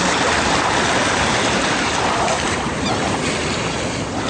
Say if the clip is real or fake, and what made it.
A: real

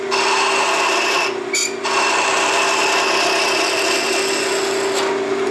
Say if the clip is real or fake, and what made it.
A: real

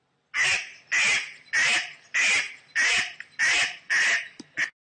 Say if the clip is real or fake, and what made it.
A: real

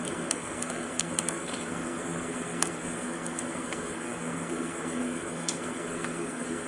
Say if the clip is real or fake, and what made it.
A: fake, codec, SNAC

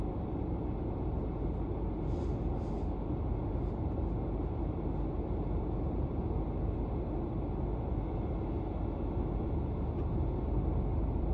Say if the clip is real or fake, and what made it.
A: real